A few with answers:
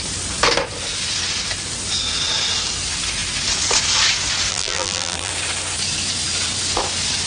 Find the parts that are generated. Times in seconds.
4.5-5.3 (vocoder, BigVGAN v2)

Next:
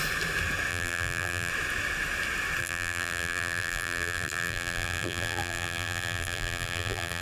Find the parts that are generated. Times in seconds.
0.7-1.5 (vocoder, BigVGAN v2); 2.6-7.2

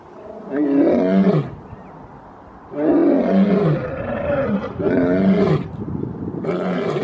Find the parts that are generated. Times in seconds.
none